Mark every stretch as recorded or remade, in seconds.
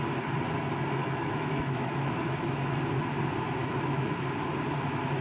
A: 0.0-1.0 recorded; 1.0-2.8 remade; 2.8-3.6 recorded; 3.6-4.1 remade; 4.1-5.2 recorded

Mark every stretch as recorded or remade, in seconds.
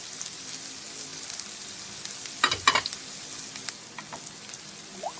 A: 0.0-5.2 recorded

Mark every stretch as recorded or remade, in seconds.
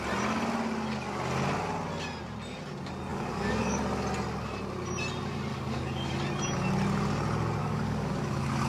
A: 0.0-3.1 recorded; 3.1-3.8 remade; 3.8-5.5 recorded; 5.5-6.1 remade; 6.1-7.6 recorded; 7.6-8.7 remade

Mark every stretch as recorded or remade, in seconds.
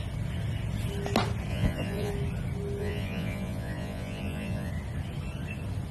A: 0.0-1.5 recorded; 1.5-2.1 remade; 2.1-2.8 recorded; 2.8-4.7 remade; 4.7-5.9 recorded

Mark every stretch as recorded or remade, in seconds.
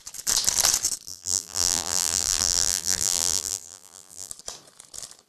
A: 0.0-1.1 recorded; 1.1-4.3 remade; 4.3-5.3 recorded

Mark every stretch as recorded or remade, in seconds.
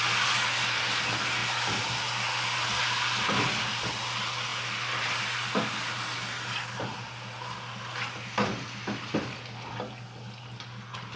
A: 0.0-11.2 recorded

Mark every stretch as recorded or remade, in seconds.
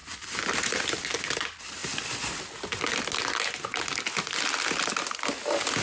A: 0.0-5.8 recorded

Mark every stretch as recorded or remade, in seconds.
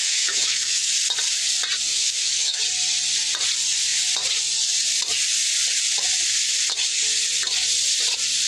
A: 0.0-0.9 remade; 0.9-1.9 recorded; 1.9-2.6 remade; 2.6-8.5 recorded